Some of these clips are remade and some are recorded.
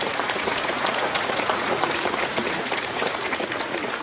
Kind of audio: remade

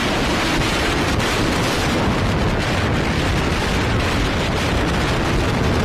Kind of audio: recorded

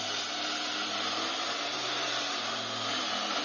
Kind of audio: recorded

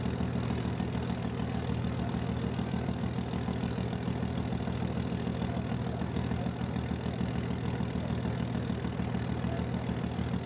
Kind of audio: recorded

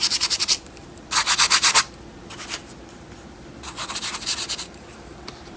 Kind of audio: recorded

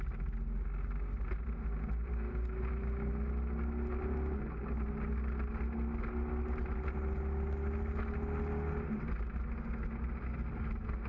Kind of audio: recorded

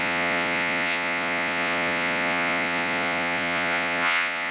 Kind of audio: remade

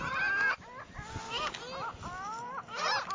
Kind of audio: recorded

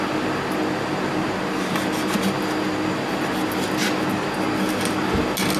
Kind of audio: recorded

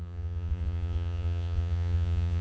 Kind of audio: remade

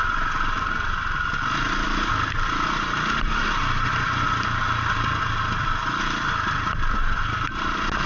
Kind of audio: recorded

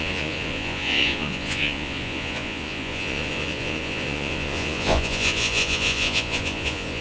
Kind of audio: remade